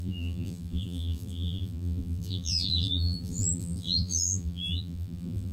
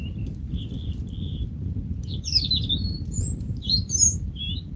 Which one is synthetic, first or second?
first